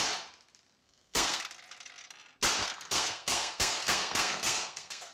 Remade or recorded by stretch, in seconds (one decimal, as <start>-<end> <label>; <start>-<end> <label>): 0.0-0.8 recorded; 0.8-1.4 remade; 1.4-2.6 recorded; 2.6-5.1 remade